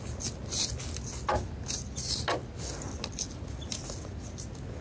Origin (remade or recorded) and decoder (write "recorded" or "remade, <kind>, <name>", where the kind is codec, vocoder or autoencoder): recorded